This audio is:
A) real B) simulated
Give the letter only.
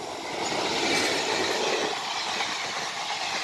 A